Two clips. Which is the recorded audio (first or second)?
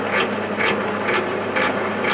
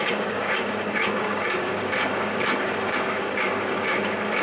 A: first